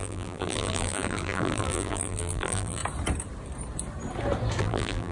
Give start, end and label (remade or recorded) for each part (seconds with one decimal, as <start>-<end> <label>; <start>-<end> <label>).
0.0-2.8 remade; 2.8-4.6 recorded; 4.6-5.1 remade